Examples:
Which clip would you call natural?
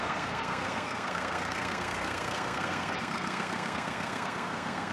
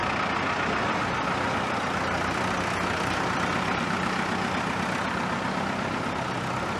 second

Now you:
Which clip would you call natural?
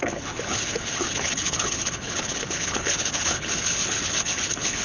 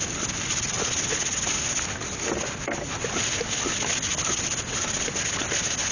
second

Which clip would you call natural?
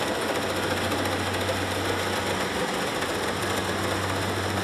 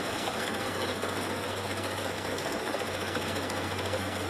first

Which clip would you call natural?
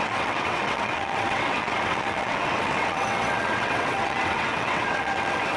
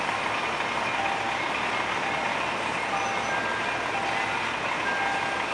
second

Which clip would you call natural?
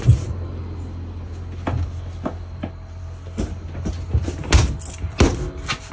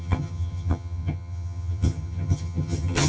first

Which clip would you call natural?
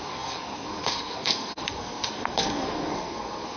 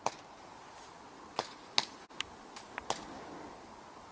second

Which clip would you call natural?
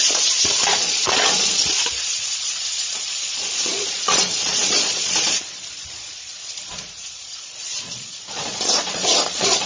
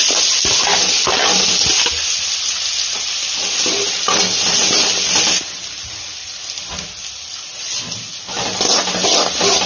second